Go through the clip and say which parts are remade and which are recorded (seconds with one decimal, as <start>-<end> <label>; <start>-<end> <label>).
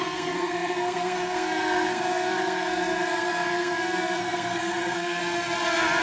0.0-5.2 remade; 5.2-6.0 recorded